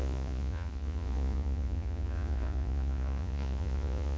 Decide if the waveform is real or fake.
fake